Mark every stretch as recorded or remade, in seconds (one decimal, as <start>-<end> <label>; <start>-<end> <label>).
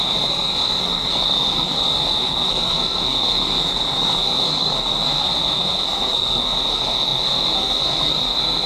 0.0-8.7 remade